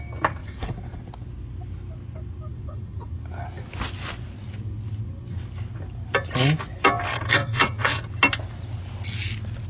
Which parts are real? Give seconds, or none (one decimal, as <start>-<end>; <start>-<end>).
0.0-0.4; 1.0-2.5; 3.1-7.3; 8.0-9.7